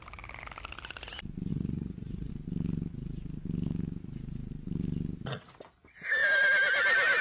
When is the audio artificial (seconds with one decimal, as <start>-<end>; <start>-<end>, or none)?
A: 1.5-2.3